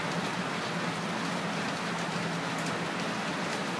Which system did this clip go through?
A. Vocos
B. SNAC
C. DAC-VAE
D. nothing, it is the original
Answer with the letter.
D